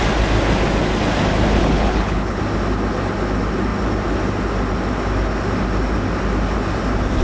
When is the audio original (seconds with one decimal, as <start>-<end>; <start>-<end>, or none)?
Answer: 0.0-1.6; 2.4-7.2